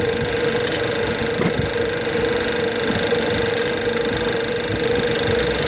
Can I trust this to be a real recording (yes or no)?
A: yes